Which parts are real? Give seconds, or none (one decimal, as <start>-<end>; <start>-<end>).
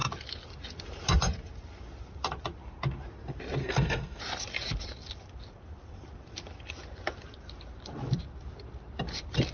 0.0-3.6; 4.2-9.5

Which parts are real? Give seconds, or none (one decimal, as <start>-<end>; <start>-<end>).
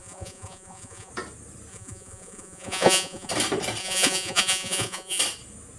1.1-1.7; 3.3-3.8; 5.2-5.8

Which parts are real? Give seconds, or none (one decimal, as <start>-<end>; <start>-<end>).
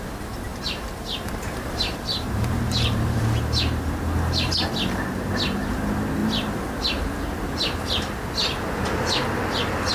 0.0-0.5; 3.2-9.9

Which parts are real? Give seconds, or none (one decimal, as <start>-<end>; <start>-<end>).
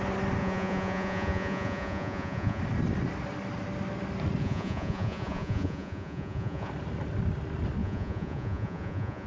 0.0-0.4; 2.6-4.4; 6.7-7.8